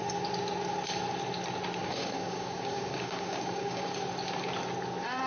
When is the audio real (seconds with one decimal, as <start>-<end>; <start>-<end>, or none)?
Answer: 0.0-1.8; 3.9-5.3